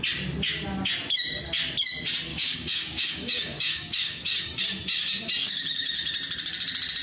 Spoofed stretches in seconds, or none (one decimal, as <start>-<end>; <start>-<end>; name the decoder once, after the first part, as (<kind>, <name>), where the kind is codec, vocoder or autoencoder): 2.3-4.6 (codec, DAC); 5.4-6.1